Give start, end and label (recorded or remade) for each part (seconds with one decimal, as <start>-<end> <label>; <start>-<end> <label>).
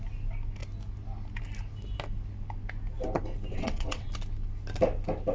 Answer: 0.0-3.5 recorded; 3.5-4.1 remade; 4.1-5.3 recorded